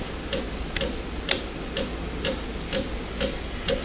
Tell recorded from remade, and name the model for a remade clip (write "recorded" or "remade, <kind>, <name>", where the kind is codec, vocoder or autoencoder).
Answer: recorded